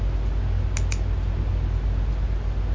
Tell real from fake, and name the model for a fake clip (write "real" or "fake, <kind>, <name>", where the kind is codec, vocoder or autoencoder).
real